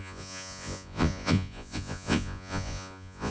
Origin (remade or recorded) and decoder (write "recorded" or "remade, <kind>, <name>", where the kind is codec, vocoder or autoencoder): remade, vocoder, Vocos